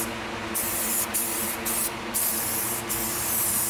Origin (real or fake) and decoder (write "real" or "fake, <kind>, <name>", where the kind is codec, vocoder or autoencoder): real